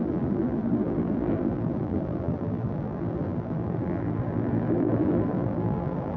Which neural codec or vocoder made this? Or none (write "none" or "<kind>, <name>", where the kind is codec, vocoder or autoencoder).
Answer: vocoder, BigVGAN v2